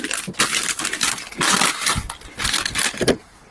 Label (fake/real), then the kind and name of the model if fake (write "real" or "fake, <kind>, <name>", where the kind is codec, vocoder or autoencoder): real